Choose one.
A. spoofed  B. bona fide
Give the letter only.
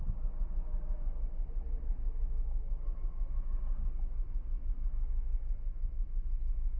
B